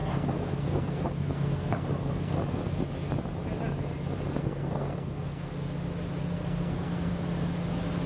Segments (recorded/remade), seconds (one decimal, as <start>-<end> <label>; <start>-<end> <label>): 0.0-2.6 remade; 2.6-4.4 recorded; 4.4-5.5 remade; 5.5-6.2 recorded; 6.2-7.1 remade; 7.1-8.1 recorded